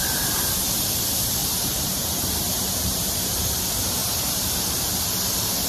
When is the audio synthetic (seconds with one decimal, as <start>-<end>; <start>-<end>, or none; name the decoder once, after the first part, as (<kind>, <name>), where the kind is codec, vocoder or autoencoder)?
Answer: 0.0-0.5 (vocoder, BigVGAN v2); 1.4-3.4; 4.0-4.8